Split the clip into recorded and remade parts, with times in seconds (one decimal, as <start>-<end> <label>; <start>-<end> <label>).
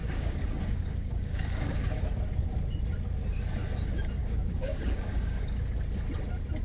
0.0-2.0 remade; 2.0-4.2 recorded; 4.2-5.4 remade; 5.4-6.6 recorded